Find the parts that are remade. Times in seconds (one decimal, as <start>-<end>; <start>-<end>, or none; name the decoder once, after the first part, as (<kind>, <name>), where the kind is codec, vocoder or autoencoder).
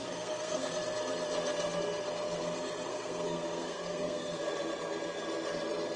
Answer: 0.0-0.7 (codec, SNAC); 2.9-4.4